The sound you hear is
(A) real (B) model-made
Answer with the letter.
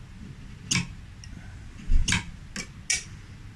A